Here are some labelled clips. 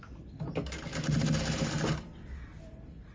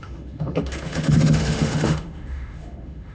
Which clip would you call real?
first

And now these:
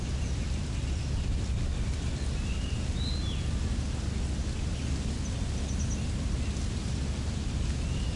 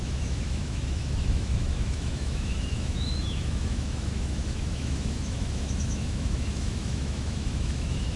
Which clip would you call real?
first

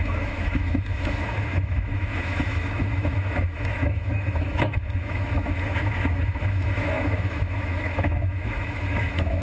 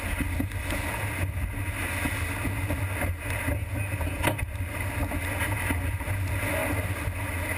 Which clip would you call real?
second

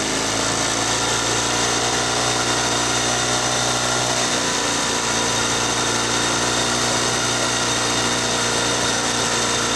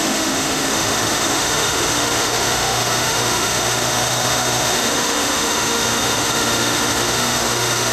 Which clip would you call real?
first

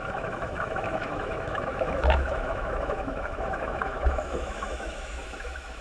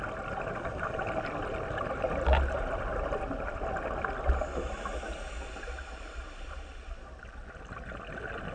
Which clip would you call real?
second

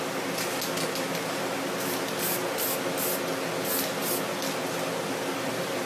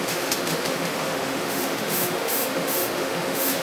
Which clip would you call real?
first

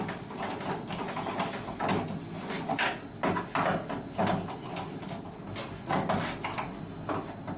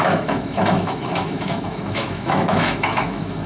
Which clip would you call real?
first